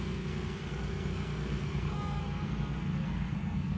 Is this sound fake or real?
fake